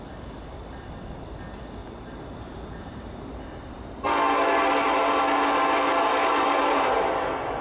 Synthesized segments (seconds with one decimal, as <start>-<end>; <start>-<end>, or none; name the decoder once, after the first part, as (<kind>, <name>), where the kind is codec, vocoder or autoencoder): 1.8-3.9 (vocoder, BigVGAN v2); 6.2-7.1